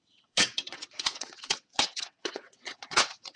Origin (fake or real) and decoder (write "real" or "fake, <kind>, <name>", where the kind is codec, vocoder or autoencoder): fake, vocoder, WaveNeXt